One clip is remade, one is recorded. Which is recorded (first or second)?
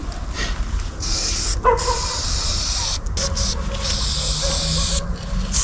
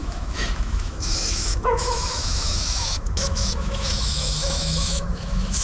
first